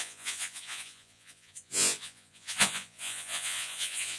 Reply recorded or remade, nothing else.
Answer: remade